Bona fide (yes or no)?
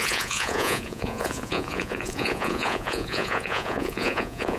no